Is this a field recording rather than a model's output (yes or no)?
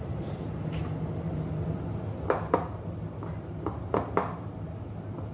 yes